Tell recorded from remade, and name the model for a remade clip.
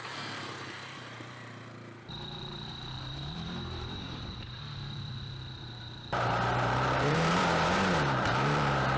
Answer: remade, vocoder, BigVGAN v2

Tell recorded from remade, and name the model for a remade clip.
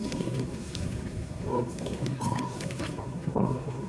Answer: remade, codec, SNAC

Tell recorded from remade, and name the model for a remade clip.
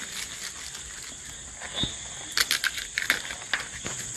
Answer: recorded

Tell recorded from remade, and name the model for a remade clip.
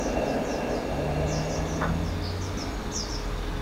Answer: recorded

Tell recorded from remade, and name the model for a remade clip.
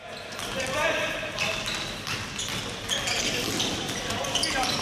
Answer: recorded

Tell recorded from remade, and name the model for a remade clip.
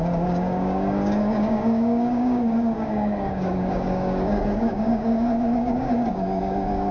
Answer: remade, codec, DAC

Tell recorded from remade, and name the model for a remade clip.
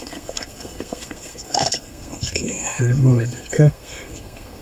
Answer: remade, codec, SNAC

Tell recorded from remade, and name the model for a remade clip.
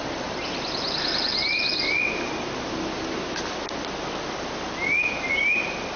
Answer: recorded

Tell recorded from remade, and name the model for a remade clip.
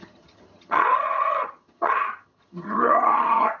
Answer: remade, vocoder, HiFi-GAN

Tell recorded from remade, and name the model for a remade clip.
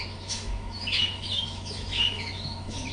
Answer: remade, autoencoder, DAC-VAE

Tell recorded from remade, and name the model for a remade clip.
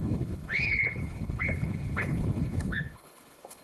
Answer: remade, codec, HILCodec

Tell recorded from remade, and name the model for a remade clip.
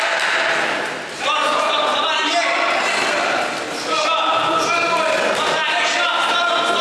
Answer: recorded